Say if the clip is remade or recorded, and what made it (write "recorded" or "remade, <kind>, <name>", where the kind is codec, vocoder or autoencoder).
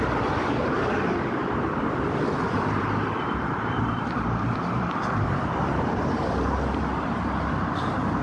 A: remade, vocoder, BigVGAN v2